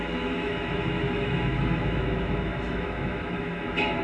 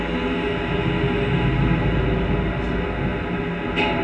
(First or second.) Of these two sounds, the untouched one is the second